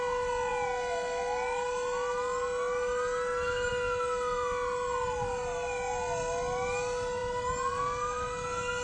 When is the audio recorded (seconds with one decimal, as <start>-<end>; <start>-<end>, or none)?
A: 0.0-8.8